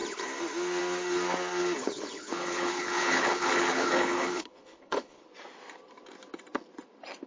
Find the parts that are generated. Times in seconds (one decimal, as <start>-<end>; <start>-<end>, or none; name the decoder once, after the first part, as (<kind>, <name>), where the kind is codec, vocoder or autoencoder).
1.8-5.2 (codec, HILCodec)